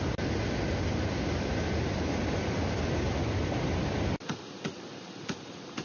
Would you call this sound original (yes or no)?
yes